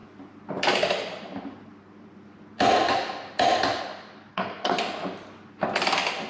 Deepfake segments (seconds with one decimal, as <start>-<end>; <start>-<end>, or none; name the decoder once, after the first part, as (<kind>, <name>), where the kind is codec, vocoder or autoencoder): 4.3-4.8 (codec, SNAC)